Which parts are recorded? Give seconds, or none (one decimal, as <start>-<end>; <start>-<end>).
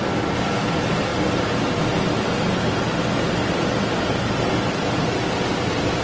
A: 0.0-6.0